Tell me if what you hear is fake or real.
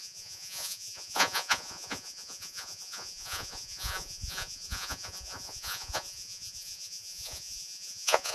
fake